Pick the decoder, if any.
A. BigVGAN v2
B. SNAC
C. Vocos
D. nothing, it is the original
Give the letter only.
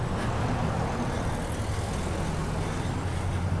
D